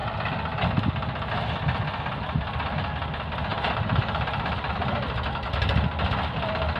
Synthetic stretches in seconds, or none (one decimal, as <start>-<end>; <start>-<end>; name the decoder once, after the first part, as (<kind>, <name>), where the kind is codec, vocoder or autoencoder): 3.5-4.7 (vocoder, BigVGAN v2)